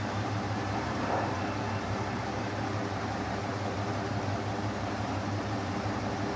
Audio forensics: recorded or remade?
remade